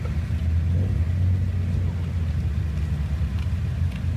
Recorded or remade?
recorded